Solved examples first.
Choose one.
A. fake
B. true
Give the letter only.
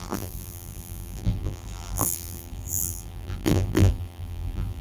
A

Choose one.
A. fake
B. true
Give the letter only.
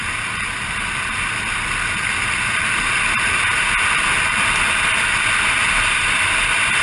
A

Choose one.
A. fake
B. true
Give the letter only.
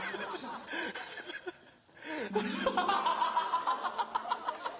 B